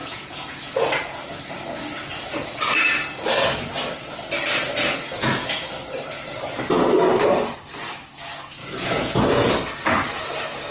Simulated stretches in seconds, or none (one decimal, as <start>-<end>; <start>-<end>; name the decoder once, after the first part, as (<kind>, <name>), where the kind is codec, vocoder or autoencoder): 0.0-1.0 (vocoder, Vocos); 5.2-5.7; 8.6-9.2